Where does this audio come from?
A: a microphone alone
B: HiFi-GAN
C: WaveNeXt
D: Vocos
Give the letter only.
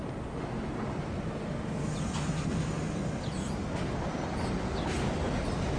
A